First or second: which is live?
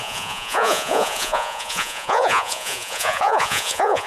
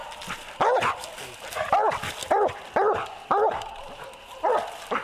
second